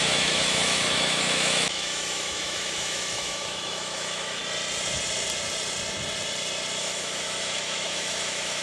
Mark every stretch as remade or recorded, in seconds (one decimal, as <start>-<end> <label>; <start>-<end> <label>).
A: 0.0-4.4 remade; 4.4-6.8 recorded; 6.8-8.6 remade

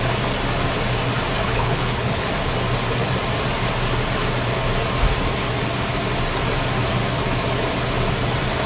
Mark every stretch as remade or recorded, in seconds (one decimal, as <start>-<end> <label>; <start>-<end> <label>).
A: 0.0-1.4 recorded; 1.4-2.3 remade; 2.3-8.7 recorded

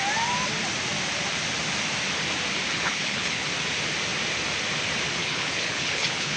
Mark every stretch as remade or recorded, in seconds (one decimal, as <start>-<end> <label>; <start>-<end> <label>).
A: 0.0-2.7 recorded; 2.7-3.5 remade; 3.5-5.2 recorded; 5.2-6.4 remade

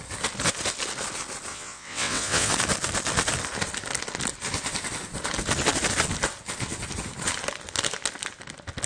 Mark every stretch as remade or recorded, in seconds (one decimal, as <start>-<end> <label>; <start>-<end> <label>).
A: 0.0-1.5 recorded; 1.5-2.5 remade; 2.5-8.9 recorded

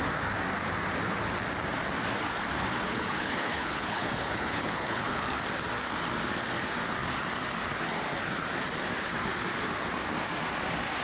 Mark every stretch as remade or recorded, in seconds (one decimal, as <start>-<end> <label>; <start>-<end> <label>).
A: 0.0-2.7 recorded; 2.7-5.1 remade; 5.1-11.0 recorded

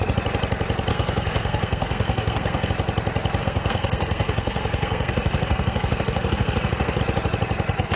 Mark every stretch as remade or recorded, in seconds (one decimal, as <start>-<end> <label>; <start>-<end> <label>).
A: 0.0-0.9 recorded; 0.9-2.7 remade; 2.7-3.4 recorded; 3.4-7.0 remade; 7.0-8.0 recorded

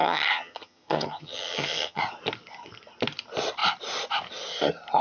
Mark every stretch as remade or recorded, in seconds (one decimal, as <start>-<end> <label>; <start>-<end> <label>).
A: 0.0-2.0 remade; 2.0-5.0 recorded

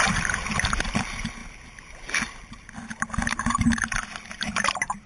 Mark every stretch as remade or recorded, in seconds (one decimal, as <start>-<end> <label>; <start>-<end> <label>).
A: 0.0-5.1 recorded